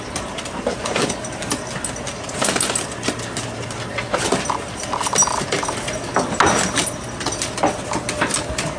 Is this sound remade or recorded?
recorded